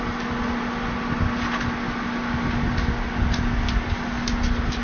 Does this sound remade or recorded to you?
recorded